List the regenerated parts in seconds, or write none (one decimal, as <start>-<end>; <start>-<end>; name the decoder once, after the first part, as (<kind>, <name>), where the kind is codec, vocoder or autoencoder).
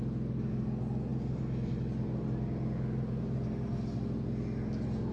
none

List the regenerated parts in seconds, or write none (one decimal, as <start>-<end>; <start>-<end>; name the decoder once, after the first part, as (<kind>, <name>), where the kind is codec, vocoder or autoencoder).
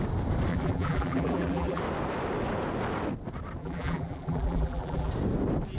0.5-1.8 (vocoder, BigVGAN v2); 3.6-5.1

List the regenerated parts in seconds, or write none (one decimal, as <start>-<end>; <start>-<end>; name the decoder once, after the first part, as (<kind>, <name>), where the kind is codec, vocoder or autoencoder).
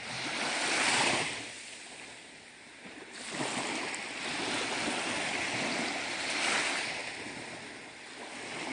none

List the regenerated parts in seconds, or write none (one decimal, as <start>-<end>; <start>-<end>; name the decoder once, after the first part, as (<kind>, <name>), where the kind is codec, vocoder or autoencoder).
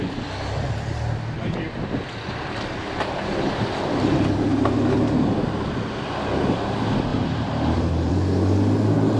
7.1-8.1 (vocoder, BigVGAN v2)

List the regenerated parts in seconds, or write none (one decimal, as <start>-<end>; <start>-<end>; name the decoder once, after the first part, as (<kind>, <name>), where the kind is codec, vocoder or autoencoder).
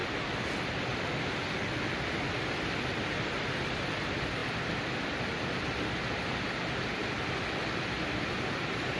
none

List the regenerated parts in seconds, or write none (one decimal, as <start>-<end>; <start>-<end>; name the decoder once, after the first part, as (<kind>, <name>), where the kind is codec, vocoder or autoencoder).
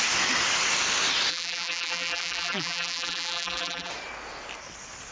1.3-3.9 (vocoder, BigVGAN v2)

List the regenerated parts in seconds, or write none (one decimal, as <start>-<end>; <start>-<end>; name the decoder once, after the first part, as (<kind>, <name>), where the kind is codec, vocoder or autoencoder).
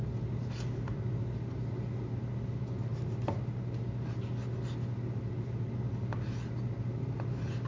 2.9-3.4 (vocoder, BigVGAN v2)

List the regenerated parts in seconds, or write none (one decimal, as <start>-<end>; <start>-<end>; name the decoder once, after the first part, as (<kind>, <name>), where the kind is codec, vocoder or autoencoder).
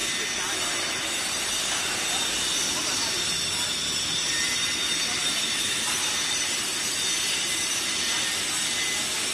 none